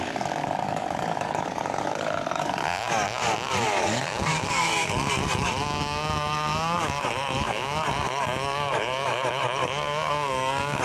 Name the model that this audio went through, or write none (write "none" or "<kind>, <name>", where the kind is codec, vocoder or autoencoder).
codec, DAC